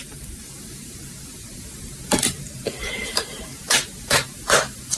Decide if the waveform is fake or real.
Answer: fake